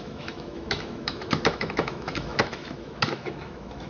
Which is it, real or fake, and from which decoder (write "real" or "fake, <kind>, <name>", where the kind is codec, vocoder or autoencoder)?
fake, autoencoder, DAC-VAE